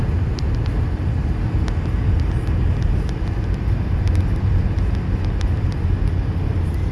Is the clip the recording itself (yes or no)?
yes